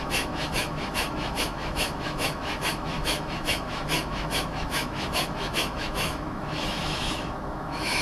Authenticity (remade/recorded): remade